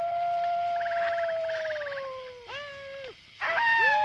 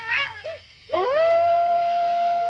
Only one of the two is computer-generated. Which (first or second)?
second